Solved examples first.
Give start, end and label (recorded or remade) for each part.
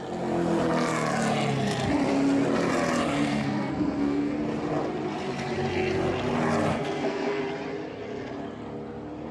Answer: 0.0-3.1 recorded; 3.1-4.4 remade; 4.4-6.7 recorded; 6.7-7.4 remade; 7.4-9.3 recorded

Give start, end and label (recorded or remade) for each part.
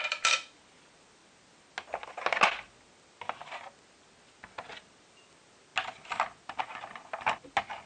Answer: 0.0-7.9 recorded